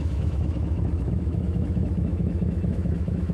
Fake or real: fake